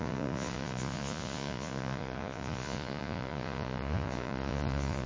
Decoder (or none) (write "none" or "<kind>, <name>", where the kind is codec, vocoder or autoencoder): vocoder, Vocos